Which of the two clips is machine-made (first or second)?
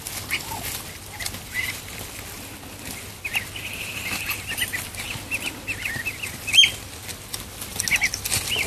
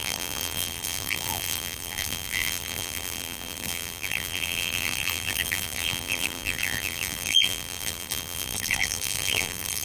second